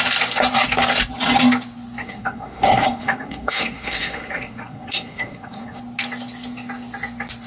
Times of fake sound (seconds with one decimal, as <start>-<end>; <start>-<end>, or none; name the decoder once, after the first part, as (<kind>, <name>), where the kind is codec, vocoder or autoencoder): 2.0-5.8 (codec, SNAC)